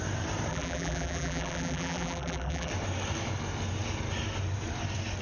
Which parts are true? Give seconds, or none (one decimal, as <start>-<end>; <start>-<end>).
0.0-0.5; 2.7-5.2